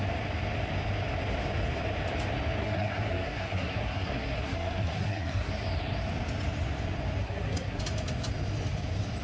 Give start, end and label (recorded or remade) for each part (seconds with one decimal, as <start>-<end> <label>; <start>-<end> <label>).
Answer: 0.0-2.6 recorded; 2.6-5.5 remade; 5.5-7.2 recorded; 7.2-7.8 remade; 7.8-9.2 recorded